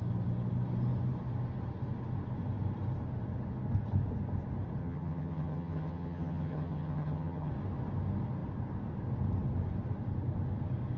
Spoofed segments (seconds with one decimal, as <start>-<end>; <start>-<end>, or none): 4.8-7.5